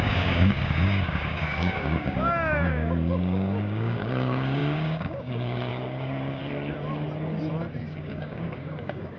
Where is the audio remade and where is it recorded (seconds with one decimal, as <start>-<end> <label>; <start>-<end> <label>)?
0.0-6.4 remade; 6.4-7.8 recorded; 7.8-9.2 remade